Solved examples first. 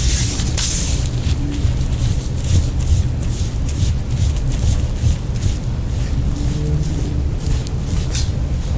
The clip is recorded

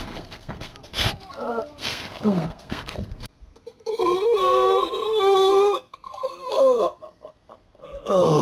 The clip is remade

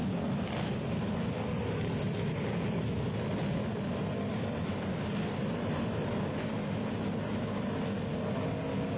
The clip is recorded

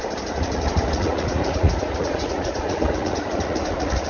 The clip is remade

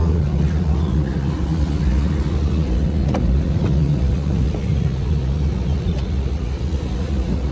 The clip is remade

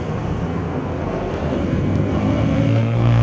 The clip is remade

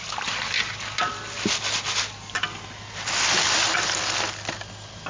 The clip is recorded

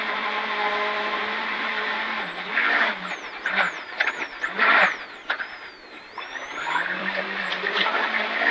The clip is remade